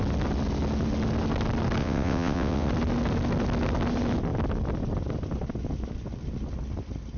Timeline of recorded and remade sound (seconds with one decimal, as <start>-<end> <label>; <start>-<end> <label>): 0.0-1.8 recorded; 1.8-2.7 remade; 2.7-7.2 recorded